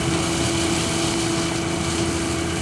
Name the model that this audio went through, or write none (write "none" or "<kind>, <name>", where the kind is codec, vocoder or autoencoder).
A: none